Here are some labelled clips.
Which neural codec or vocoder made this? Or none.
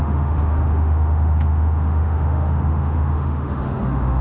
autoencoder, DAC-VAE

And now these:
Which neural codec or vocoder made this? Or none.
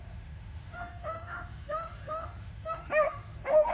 autoencoder, DAC-VAE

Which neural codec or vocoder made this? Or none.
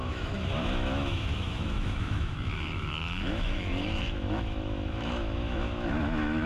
autoencoder, DAC-VAE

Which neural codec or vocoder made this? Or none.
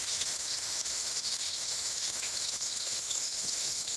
autoencoder, DAC-VAE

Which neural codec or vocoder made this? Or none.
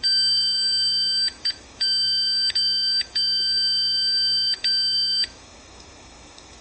autoencoder, DAC-VAE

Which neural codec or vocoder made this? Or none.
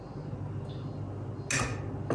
none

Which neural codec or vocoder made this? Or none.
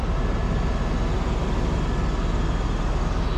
none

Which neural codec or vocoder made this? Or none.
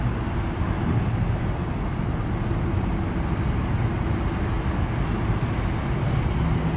none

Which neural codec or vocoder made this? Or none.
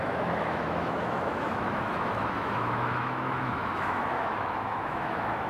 autoencoder, DAC-VAE